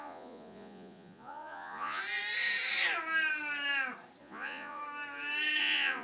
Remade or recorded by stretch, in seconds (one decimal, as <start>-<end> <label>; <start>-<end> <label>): 0.0-2.0 remade; 2.0-4.2 recorded; 4.2-4.8 remade; 4.8-5.6 recorded; 5.6-6.0 remade